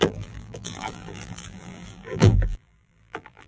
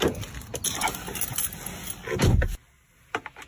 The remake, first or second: first